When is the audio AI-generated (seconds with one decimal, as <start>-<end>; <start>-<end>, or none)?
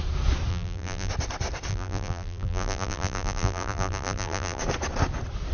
0.5-1.1; 1.7-4.6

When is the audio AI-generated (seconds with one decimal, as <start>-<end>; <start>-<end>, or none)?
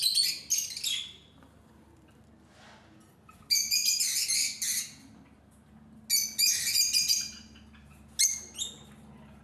none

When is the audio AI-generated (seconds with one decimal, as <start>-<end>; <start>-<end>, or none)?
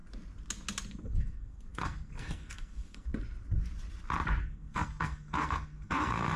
0.9-3.1; 4.4-6.4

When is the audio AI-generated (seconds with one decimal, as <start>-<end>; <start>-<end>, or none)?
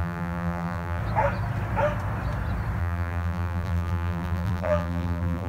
0.0-1.0; 2.8-5.5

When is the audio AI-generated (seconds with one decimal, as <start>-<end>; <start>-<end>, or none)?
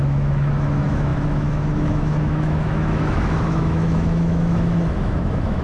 0.0-5.6